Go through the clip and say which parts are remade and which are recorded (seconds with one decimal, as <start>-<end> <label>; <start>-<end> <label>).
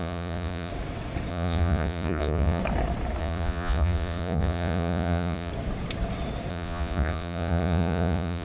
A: 0.0-0.7 remade; 0.7-1.3 recorded; 1.3-2.6 remade; 2.6-3.2 recorded; 3.2-5.5 remade; 5.5-6.5 recorded; 6.5-8.4 remade